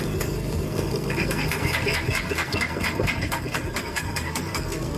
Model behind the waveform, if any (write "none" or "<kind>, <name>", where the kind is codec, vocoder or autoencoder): codec, SNAC